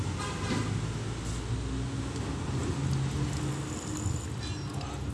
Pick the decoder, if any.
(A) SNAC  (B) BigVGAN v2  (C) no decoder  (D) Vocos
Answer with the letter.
C